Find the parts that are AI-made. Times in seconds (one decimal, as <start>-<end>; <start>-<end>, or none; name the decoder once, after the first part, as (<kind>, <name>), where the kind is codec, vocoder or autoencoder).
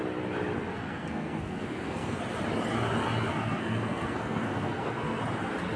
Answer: 0.7-2.2 (codec, SNAC); 3.3-5.2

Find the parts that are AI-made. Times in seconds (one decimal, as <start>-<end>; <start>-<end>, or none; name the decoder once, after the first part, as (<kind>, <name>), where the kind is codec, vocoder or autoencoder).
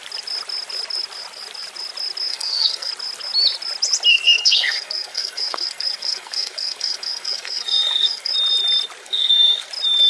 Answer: 2.3-2.9 (codec, SNAC); 4.1-8.3; 9.0-9.7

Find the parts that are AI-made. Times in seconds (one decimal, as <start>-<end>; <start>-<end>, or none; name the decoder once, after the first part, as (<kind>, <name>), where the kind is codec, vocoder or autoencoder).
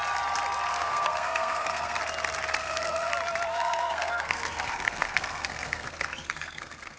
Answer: 0.7-2.0 (codec, SNAC); 2.6-3.1; 3.5-7.0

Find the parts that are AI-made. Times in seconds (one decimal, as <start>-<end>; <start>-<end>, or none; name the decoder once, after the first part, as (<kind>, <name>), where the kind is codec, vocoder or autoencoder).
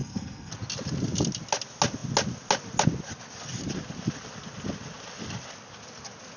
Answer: 0.0-0.5 (codec, SNAC)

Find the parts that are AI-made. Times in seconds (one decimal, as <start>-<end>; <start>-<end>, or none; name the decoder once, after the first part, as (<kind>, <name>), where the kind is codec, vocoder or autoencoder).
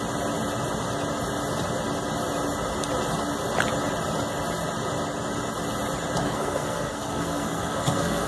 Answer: 6.2-8.3 (codec, SNAC)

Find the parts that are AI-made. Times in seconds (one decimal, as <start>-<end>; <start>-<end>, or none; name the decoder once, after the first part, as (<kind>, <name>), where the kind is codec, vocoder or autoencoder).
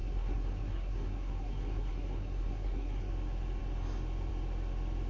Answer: 0.0-3.1 (codec, SNAC)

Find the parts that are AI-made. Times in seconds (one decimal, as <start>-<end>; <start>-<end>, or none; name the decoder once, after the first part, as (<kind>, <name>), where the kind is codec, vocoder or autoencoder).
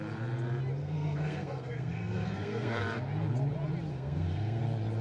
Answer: 0.8-2.8 (codec, SNAC); 3.9-4.6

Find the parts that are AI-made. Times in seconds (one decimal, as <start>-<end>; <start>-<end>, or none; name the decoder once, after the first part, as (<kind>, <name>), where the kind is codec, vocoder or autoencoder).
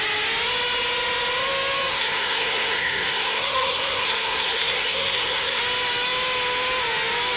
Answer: 1.9-5.6 (codec, SNAC)